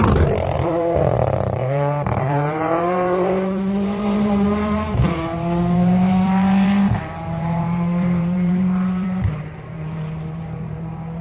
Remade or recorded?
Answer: remade